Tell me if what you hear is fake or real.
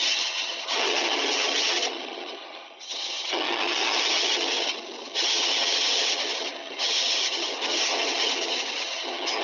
fake